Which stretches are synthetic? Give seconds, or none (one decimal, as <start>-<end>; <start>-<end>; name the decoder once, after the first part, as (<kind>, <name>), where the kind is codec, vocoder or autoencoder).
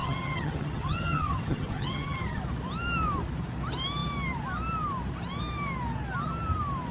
0.0-2.4 (vocoder, HiFi-GAN)